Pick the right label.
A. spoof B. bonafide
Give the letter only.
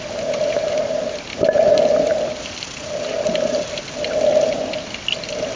B